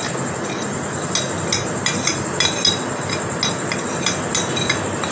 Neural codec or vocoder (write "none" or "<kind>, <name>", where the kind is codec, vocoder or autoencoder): none